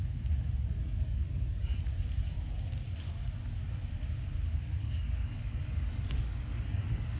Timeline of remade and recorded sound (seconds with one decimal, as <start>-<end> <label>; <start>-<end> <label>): 0.0-0.8 recorded; 0.8-1.8 remade; 1.8-4.8 recorded; 4.8-7.2 remade